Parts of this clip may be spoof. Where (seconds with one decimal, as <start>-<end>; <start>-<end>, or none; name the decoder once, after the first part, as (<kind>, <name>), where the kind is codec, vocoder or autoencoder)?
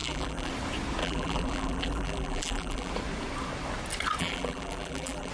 0.0-0.5 (vocoder, BigVGAN v2); 1.0-2.9; 4.2-5.3